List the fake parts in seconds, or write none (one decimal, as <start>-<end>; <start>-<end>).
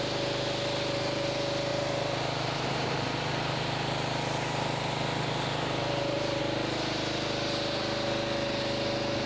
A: 1.7-6.4